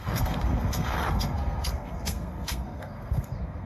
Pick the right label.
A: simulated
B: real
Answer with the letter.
A